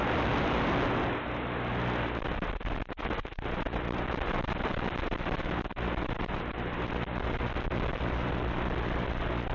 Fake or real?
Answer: real